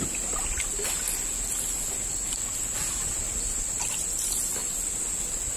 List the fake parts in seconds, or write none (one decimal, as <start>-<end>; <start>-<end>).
none